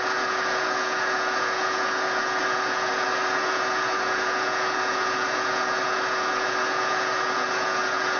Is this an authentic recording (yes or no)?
no